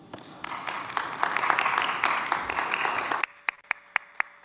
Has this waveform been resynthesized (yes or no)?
no